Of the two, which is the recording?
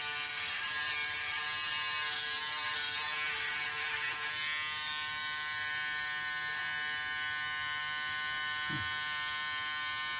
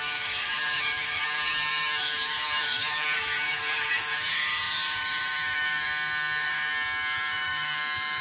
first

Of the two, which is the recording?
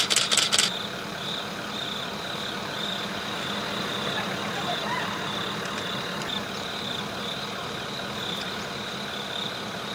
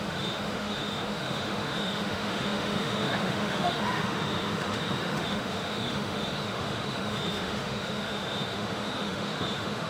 first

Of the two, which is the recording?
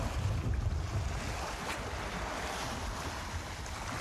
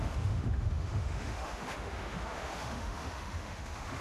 first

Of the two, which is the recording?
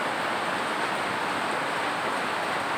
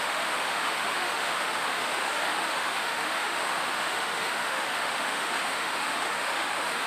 first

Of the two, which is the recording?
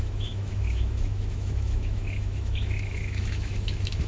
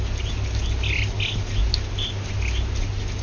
second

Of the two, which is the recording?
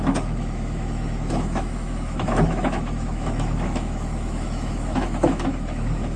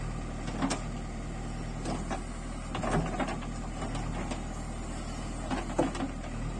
second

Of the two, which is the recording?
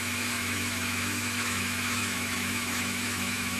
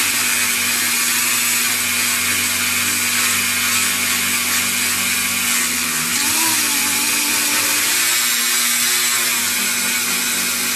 second